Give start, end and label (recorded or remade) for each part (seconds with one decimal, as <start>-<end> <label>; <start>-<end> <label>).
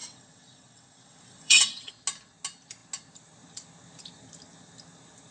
0.0-1.9 remade; 1.9-5.3 recorded